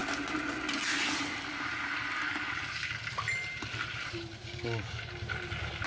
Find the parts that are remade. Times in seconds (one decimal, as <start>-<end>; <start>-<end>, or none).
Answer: 4.4-5.0